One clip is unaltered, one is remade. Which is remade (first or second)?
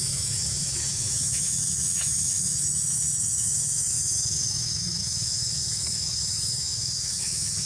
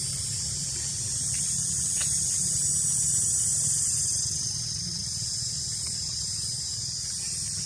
first